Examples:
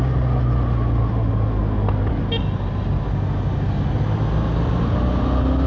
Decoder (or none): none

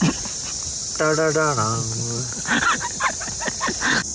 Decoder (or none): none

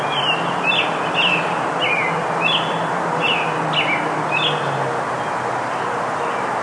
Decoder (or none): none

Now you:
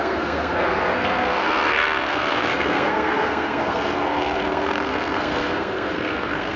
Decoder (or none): codec, SNAC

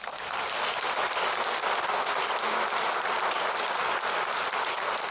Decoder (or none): none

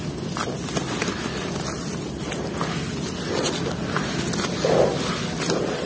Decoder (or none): none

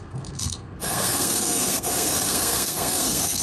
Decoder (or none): codec, SNAC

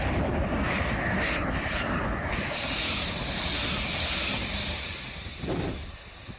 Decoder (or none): none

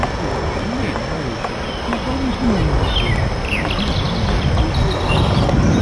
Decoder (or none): none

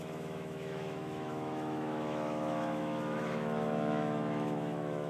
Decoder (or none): autoencoder, DAC-VAE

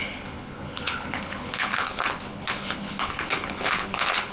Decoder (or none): codec, HILCodec